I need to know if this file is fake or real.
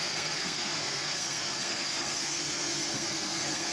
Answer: fake